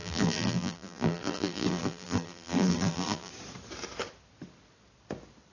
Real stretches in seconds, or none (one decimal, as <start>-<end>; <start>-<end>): 3.3-5.5